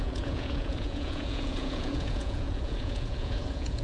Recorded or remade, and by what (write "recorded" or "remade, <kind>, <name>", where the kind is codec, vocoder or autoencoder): remade, vocoder, Vocos